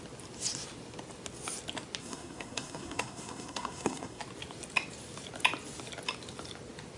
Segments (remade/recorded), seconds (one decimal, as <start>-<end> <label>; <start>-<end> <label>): 0.0-2.0 recorded; 2.0-4.2 remade; 4.2-7.0 recorded